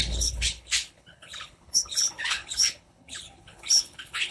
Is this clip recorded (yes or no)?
no